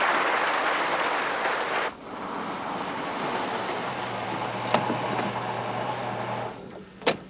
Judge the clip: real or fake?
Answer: real